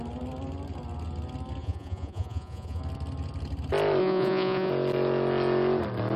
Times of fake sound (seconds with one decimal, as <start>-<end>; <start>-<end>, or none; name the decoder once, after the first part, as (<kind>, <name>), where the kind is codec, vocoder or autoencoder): 1.6-2.8 (vocoder, Vocos); 4.0-4.7